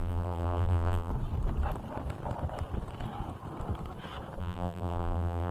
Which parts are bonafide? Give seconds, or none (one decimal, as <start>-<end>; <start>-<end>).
1.1-4.4